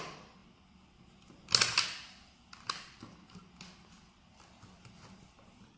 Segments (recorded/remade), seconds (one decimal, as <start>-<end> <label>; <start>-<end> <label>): 0.0-5.8 recorded